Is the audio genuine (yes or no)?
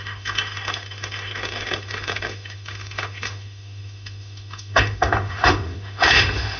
no